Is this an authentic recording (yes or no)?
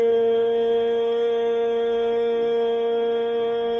no